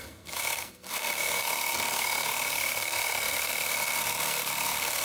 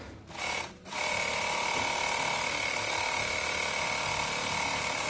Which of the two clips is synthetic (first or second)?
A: first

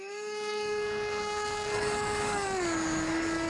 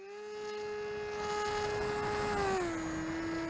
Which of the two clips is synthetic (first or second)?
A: first